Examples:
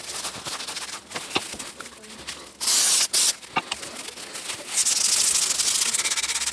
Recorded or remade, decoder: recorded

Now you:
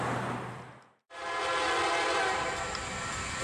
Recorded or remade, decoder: recorded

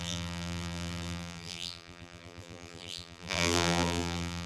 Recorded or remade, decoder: remade, vocoder, BigVGAN v2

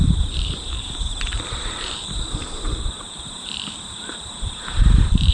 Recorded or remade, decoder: remade, vocoder, BigVGAN v2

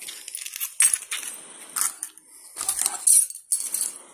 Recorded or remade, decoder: recorded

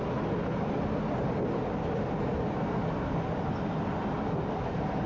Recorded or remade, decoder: recorded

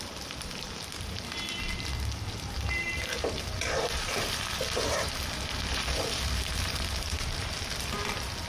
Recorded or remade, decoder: remade, vocoder, BigVGAN v2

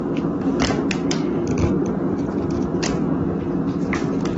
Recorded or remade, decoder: remade, vocoder, BigVGAN v2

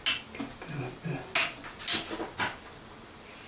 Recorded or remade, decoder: recorded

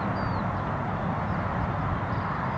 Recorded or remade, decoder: recorded